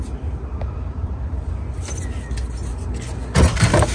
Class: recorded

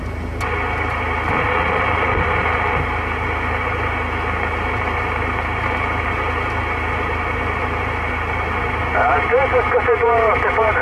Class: recorded